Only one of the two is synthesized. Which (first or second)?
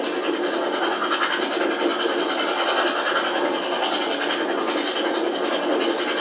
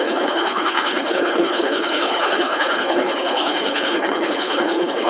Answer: second